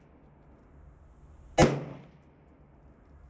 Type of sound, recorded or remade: recorded